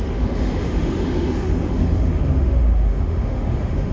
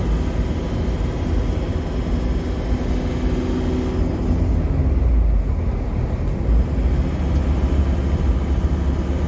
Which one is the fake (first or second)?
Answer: first